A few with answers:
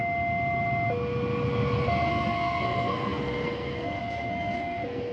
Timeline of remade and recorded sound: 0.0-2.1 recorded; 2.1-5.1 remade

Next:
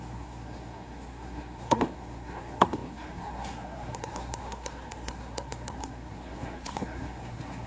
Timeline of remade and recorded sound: 0.0-7.7 remade